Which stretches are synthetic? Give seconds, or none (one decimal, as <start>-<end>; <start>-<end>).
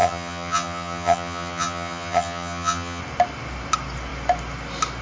0.0-3.0